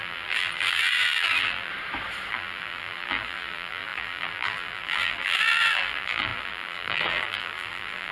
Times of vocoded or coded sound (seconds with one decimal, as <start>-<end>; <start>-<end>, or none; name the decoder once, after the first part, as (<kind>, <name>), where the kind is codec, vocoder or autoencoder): 0.0-1.7 (vocoder, BigVGAN v2); 2.3-8.1